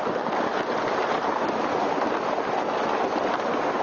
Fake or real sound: real